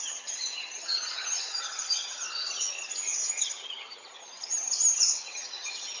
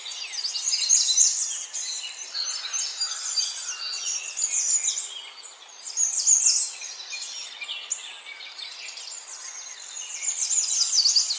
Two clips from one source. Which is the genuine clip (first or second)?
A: second